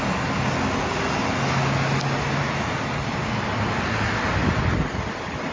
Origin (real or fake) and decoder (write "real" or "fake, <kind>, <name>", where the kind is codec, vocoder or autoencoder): real